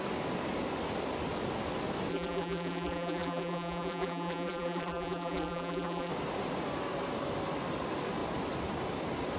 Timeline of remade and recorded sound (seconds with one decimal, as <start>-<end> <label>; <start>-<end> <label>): 0.0-2.1 recorded; 2.1-6.1 remade; 6.1-9.4 recorded